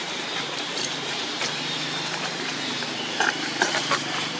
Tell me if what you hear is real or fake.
fake